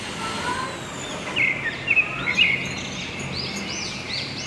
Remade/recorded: recorded